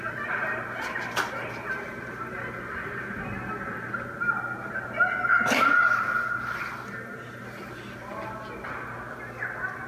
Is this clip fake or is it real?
real